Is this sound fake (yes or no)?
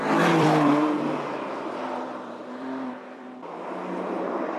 yes